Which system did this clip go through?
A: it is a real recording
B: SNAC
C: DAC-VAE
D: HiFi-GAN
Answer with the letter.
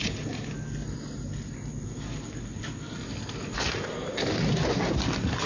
A